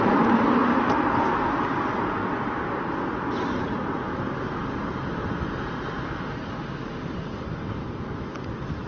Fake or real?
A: real